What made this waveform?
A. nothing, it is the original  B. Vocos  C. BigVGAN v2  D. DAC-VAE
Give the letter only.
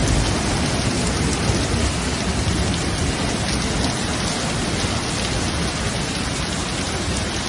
A